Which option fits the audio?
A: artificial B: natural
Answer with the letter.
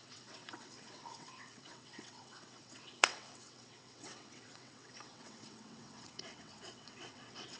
A